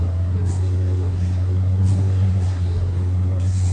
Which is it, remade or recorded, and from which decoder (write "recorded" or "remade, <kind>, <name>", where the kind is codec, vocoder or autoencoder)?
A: remade, codec, SNAC